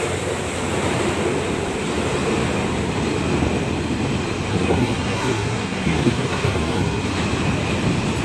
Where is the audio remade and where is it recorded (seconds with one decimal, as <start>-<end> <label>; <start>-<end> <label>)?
0.0-4.5 recorded; 4.5-7.0 remade; 7.0-8.2 recorded